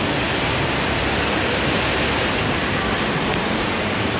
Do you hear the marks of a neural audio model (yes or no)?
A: no